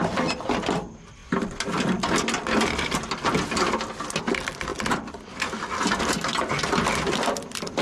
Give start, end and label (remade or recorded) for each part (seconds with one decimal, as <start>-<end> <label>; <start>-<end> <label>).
0.0-1.2 remade; 1.2-4.3 recorded; 4.3-4.7 remade; 4.7-7.1 recorded; 7.1-7.8 remade

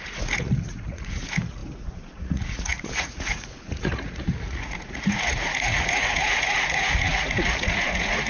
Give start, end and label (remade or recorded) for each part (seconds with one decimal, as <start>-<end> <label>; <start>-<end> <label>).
0.0-8.3 remade

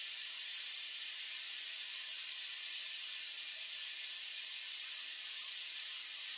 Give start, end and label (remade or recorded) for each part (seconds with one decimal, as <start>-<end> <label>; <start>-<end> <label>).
0.0-0.9 remade; 0.9-6.4 recorded

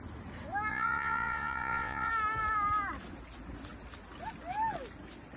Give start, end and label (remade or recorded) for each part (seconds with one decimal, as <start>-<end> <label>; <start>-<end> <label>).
0.0-0.7 recorded; 0.7-2.1 remade; 2.1-5.4 recorded